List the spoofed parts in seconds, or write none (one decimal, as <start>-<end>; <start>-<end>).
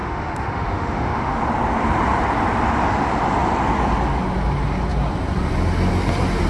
0.0-1.4